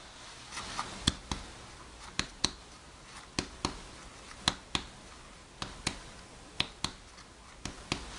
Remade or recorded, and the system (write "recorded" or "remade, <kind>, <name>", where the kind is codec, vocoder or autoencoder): recorded